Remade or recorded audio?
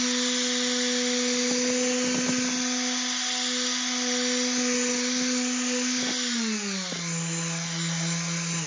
recorded